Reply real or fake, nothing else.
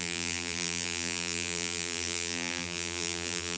fake